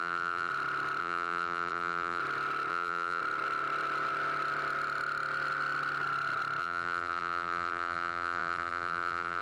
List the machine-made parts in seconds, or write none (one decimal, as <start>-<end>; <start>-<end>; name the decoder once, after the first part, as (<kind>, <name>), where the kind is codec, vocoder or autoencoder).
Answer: 0.0-0.5 (vocoder, BigVGAN v2); 1.0-2.2; 2.7-3.2; 6.6-9.4